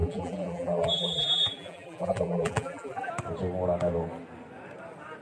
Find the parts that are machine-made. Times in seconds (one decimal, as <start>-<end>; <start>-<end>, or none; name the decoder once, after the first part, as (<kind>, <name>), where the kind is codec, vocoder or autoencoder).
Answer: 0.0-3.1 (vocoder, BigVGAN v2)